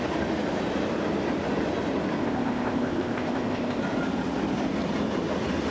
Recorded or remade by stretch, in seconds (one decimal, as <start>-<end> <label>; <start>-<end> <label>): 0.0-2.2 recorded; 2.2-3.8 remade; 3.8-5.7 recorded